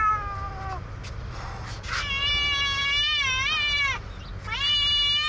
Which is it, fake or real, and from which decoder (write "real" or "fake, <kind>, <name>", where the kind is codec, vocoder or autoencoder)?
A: real